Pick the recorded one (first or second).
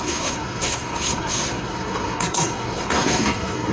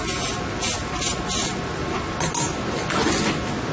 second